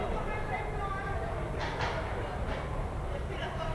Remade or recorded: remade